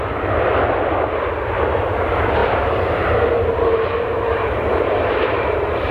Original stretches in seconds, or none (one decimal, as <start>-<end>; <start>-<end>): 0.0-2.4